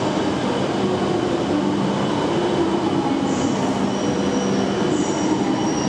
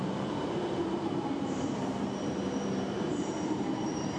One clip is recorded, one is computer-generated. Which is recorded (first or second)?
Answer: first